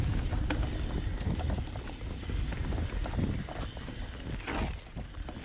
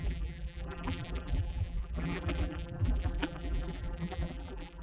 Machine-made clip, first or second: second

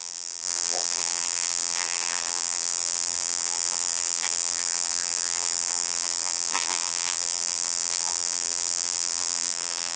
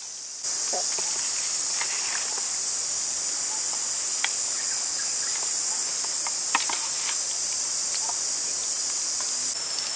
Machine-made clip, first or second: first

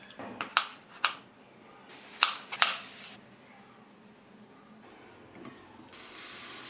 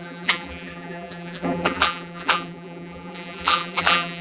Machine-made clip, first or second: second